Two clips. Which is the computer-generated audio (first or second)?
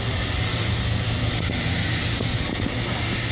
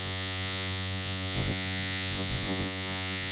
second